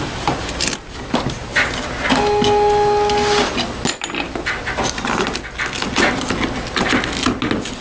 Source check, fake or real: real